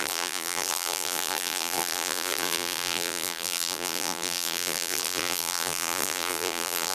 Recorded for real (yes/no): no